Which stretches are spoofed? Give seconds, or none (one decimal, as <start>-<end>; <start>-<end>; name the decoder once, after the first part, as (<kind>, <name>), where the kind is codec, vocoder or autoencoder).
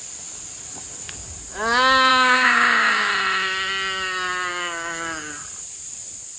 2.1-3.1 (codec, DAC); 4.5-5.3